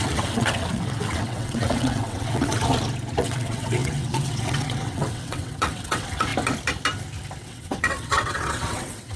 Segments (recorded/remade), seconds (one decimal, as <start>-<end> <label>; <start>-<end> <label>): 0.0-2.6 remade; 2.6-3.2 recorded; 3.2-6.3 remade; 6.3-7.4 recorded; 7.4-9.2 remade